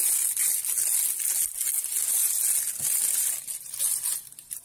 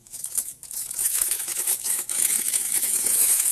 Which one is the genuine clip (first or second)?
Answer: first